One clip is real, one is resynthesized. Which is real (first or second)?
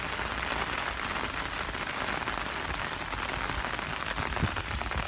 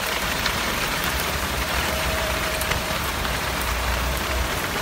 first